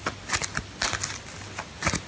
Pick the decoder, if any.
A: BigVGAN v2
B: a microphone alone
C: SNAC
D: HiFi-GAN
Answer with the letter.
B